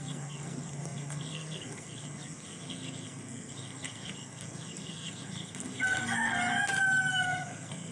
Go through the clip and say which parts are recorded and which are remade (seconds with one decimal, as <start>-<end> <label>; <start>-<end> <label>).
0.0-6.4 remade; 6.4-7.1 recorded; 7.1-7.9 remade